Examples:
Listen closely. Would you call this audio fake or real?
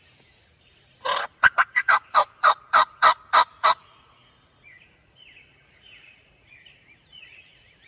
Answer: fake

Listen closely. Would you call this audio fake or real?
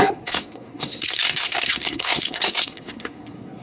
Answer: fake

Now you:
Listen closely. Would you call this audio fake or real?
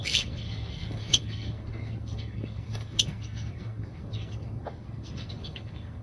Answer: fake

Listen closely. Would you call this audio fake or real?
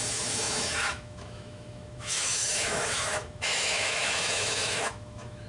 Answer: fake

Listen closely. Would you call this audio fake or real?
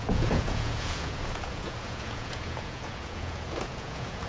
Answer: fake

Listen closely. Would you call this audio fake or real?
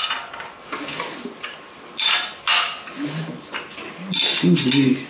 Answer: real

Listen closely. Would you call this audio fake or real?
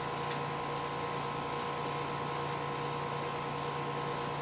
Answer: real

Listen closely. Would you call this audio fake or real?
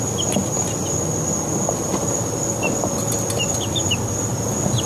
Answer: real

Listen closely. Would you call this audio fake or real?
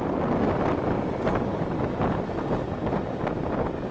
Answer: real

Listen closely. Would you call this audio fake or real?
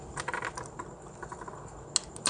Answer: real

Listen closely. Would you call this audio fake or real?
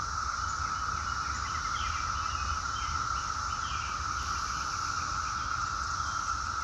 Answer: real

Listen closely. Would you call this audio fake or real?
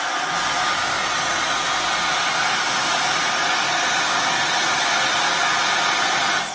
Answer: real